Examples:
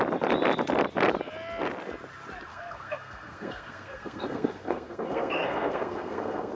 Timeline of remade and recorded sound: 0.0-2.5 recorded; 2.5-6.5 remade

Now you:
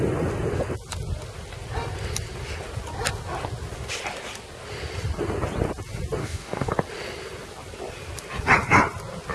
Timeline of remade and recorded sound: 0.0-6.2 recorded; 6.2-6.7 remade; 6.7-9.3 recorded

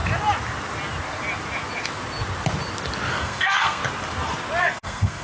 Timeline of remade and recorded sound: 0.0-3.1 recorded; 3.1-3.8 remade; 3.8-4.6 recorded; 4.6-5.2 remade

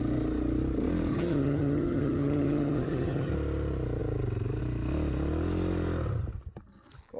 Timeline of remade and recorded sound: 0.0-1.1 recorded; 1.1-3.3 remade; 3.3-7.2 recorded